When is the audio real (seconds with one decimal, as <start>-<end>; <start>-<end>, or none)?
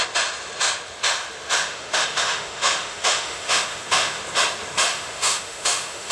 0.0-1.6; 4.2-4.9